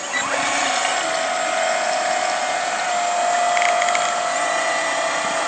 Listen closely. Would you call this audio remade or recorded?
recorded